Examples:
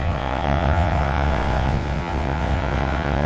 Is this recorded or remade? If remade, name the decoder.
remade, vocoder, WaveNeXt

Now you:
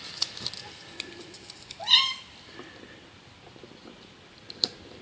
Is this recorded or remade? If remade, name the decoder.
recorded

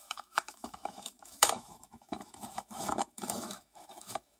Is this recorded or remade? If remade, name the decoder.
remade, autoencoder, DAC-VAE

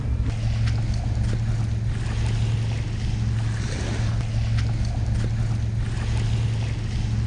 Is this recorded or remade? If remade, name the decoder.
recorded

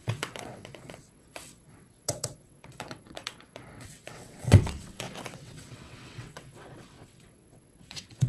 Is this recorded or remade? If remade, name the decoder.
remade, vocoder, WaveNeXt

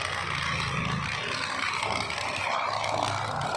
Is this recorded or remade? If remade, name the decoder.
recorded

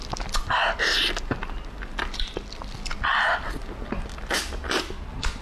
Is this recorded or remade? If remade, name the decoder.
recorded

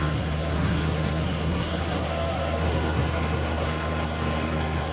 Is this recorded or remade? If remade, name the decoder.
remade, codec, SNAC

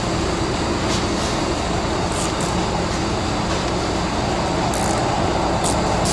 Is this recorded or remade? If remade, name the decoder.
recorded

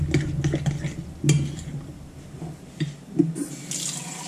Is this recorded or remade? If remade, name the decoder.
recorded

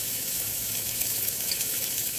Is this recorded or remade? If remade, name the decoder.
remade, autoencoder, DAC-VAE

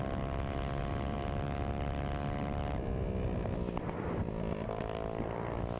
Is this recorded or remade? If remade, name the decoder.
recorded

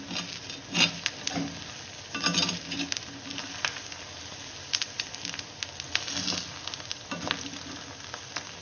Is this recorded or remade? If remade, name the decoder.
recorded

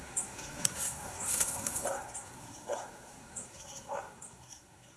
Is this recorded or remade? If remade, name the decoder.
remade, codec, SNAC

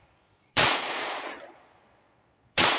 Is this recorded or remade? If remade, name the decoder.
remade, vocoder, Vocos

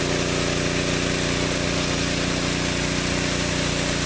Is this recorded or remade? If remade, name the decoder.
recorded